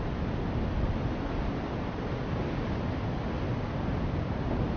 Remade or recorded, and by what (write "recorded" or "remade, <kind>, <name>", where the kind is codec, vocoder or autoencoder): recorded